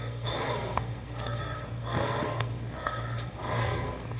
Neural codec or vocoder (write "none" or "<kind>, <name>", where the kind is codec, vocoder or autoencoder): codec, SNAC